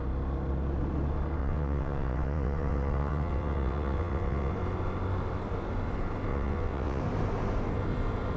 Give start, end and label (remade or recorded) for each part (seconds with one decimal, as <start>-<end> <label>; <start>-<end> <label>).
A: 0.0-1.4 recorded; 1.4-4.5 remade; 4.5-6.3 recorded; 6.3-7.0 remade; 7.0-8.4 recorded